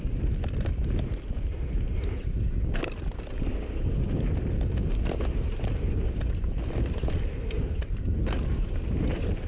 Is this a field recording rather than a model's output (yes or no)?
yes